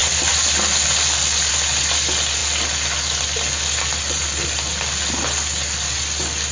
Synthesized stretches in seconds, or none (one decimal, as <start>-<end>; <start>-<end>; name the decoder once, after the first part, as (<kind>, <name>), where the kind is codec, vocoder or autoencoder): 1.5-2.4 (vocoder, BigVGAN v2)